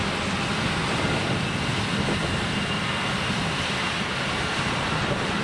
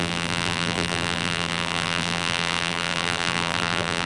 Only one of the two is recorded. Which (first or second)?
first